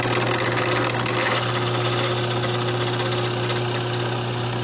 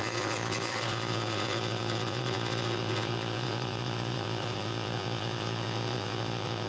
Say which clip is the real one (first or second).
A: first